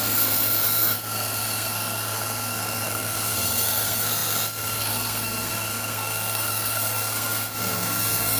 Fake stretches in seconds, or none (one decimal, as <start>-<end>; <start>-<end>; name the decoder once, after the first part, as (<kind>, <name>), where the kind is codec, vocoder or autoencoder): 0.0-8.4 (codec, SNAC)